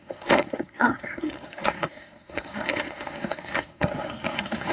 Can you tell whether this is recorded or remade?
remade